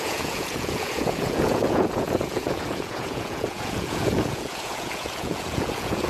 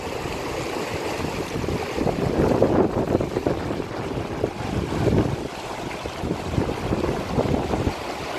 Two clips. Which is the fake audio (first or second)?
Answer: first